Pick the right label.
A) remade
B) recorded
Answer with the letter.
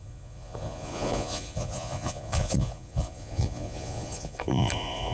A